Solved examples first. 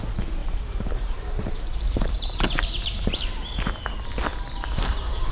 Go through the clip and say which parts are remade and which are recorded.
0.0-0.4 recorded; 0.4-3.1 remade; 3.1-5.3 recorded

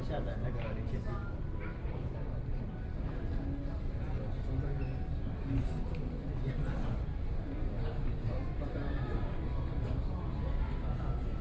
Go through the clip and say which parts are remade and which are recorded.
0.0-11.4 recorded

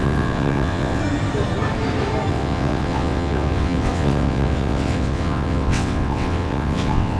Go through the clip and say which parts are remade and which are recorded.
0.0-1.0 remade; 1.0-2.3 recorded; 2.3-7.2 remade